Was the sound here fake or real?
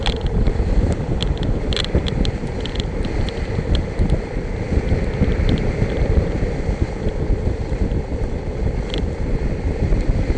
real